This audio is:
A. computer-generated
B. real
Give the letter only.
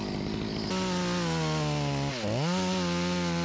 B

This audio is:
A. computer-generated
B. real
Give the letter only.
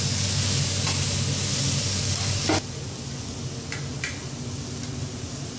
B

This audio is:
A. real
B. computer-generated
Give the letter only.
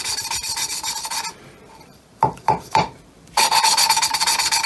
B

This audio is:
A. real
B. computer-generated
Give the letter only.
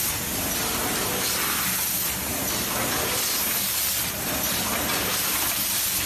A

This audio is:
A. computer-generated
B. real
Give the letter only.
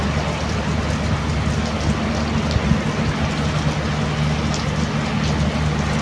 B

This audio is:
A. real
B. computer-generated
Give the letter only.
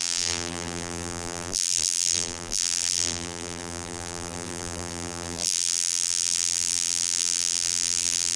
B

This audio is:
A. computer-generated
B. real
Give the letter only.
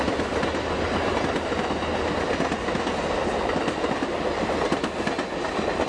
B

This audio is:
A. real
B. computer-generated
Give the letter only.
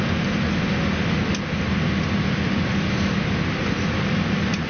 A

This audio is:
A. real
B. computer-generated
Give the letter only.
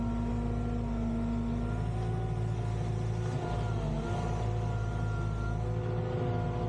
A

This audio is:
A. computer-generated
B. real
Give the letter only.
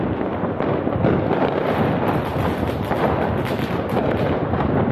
B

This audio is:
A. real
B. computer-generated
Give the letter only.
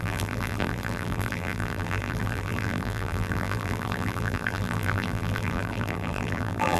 B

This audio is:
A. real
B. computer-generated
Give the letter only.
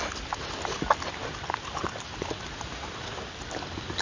A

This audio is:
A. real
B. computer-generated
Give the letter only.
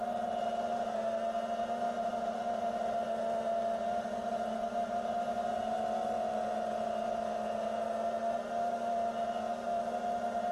A